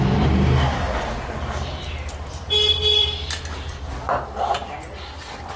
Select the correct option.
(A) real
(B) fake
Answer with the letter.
A